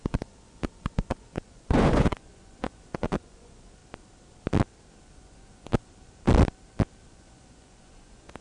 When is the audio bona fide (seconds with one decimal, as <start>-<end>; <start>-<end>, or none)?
3.8-5.0; 5.7-7.1